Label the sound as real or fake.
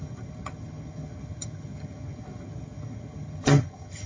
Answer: fake